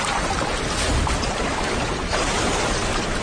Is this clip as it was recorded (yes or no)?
yes